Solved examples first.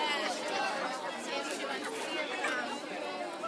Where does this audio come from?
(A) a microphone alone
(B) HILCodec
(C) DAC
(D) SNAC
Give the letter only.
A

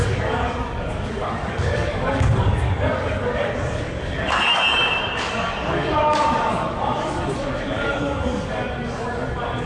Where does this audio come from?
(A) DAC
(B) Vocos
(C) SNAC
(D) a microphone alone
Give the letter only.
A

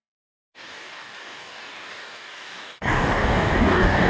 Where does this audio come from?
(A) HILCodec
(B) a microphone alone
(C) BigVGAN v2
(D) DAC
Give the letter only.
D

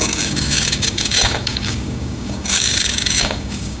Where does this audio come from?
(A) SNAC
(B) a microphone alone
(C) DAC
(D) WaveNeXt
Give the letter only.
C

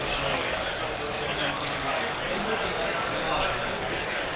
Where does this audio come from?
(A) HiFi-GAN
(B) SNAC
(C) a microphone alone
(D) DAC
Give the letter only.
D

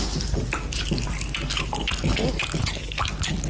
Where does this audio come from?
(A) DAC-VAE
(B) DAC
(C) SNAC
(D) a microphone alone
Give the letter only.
D